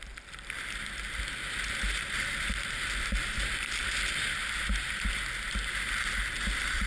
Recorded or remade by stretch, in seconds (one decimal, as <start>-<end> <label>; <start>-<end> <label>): 0.0-6.9 recorded